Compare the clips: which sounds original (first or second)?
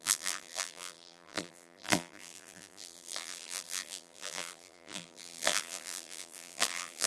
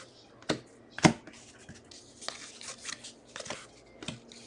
second